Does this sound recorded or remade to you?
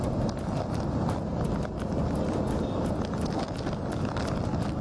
recorded